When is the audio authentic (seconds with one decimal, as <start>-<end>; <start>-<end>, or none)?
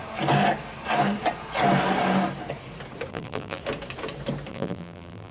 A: 0.0-3.1; 3.6-4.5